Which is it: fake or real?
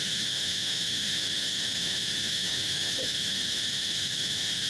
fake